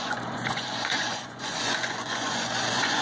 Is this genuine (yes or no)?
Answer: no